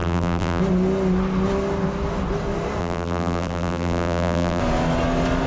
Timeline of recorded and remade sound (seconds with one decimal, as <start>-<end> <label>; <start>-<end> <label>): 0.0-0.6 remade; 0.6-2.8 recorded; 2.8-4.6 remade; 4.6-5.5 recorded